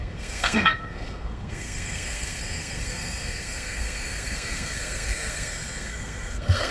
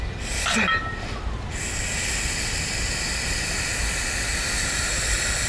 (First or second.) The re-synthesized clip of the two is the first